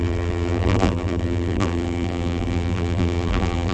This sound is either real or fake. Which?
fake